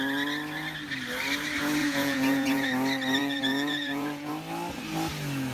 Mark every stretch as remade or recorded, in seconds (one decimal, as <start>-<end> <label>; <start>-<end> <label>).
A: 0.0-1.8 recorded; 1.8-2.7 remade; 2.7-3.2 recorded; 3.2-4.3 remade; 4.3-5.5 recorded